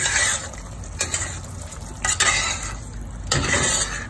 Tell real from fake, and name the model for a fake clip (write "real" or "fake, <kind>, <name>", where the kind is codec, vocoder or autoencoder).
real